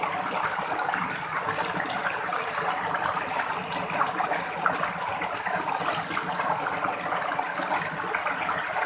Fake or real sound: real